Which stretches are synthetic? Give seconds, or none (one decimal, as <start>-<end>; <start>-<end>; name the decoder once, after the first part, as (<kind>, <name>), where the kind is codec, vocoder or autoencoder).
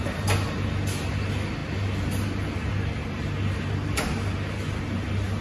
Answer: none